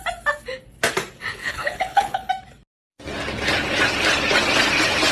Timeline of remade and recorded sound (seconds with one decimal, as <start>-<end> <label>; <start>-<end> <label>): 0.0-1.4 recorded; 1.4-2.3 remade; 2.3-5.1 recorded